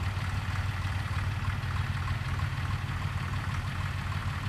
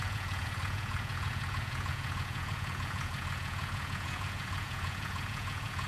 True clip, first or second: first